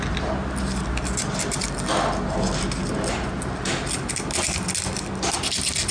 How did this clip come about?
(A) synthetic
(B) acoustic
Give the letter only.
B